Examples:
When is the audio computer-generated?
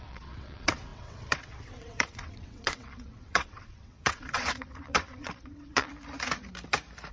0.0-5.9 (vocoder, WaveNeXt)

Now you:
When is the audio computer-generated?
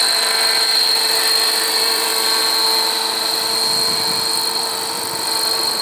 0.0-2.1 (vocoder, BigVGAN v2); 4.4-5.8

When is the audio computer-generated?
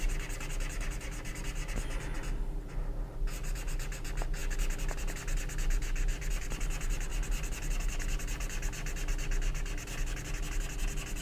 none